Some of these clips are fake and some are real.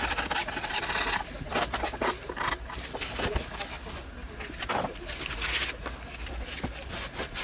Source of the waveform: real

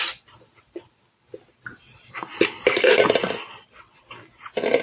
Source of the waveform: real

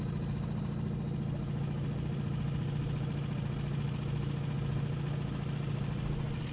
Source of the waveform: real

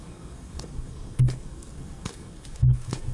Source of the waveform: fake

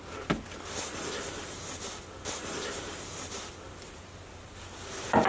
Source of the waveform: real